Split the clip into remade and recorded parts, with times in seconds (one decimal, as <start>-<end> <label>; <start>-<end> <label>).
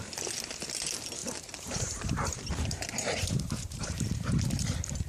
0.0-1.2 recorded; 1.2-4.3 remade; 4.3-5.1 recorded